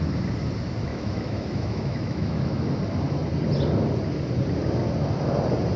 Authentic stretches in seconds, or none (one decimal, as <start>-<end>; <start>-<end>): 0.0-0.9; 2.8-5.8